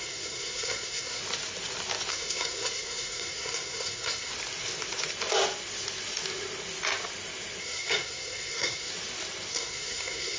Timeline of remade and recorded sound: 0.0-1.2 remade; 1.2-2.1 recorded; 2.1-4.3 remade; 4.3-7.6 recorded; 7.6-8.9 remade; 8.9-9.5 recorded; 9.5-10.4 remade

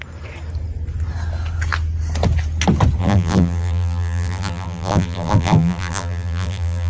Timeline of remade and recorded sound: 0.0-3.0 recorded; 3.0-6.9 remade

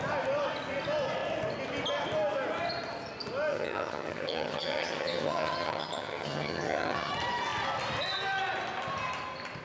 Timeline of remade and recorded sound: 0.0-3.5 recorded; 3.5-7.1 remade; 7.1-9.6 recorded

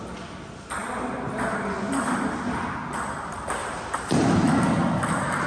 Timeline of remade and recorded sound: 0.0-3.6 recorded; 3.6-4.6 remade; 4.6-5.5 recorded

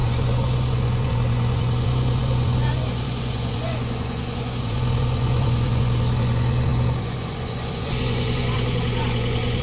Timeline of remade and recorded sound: 0.0-9.6 remade

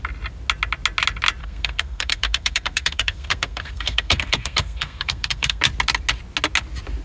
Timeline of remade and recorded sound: 0.0-1.4 recorded; 1.4-5.6 remade; 5.6-7.0 recorded